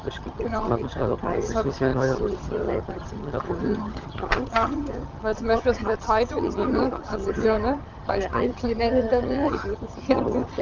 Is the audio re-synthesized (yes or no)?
yes